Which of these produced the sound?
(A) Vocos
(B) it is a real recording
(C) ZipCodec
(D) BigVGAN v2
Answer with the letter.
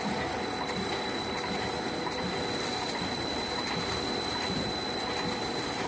D